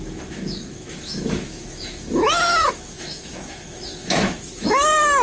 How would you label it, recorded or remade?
remade